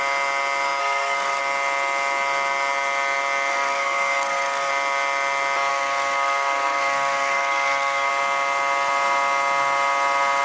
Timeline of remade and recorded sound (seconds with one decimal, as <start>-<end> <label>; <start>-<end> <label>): 0.0-0.8 recorded; 0.8-1.4 remade; 1.4-3.5 recorded; 3.5-4.7 remade; 4.7-5.7 recorded; 5.7-8.1 remade; 8.1-10.4 recorded